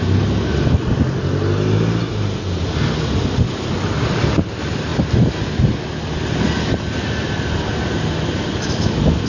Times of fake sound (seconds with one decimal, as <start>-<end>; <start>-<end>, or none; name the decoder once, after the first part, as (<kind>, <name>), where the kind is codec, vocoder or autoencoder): none